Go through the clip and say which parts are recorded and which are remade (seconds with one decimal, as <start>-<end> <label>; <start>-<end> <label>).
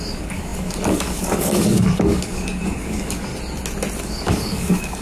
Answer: 0.0-3.3 remade; 3.3-4.0 recorded; 4.0-5.0 remade